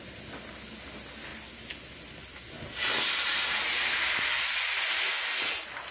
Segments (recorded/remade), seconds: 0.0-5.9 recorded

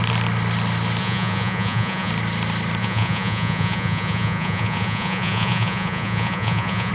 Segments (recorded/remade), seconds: 0.0-1.0 recorded; 1.0-2.1 remade; 2.1-2.8 recorded; 2.8-6.9 remade

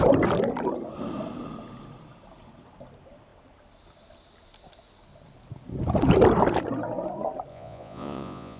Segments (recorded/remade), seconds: 0.0-7.5 recorded; 7.5-8.6 remade

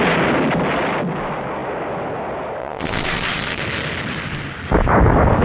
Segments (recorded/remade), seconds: 0.0-2.6 recorded; 2.6-3.6 remade; 3.6-5.4 recorded

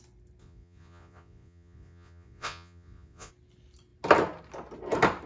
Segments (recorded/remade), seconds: 0.0-0.4 recorded; 0.4-3.3 remade; 3.3-5.3 recorded

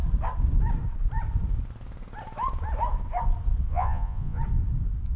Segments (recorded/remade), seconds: 0.0-3.7 recorded; 3.7-4.4 remade; 4.4-5.2 recorded